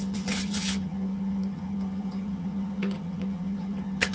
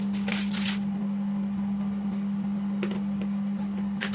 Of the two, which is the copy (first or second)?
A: first